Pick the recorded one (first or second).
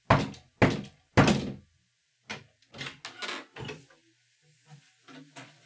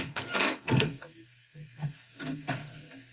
first